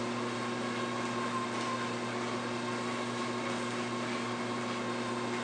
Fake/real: real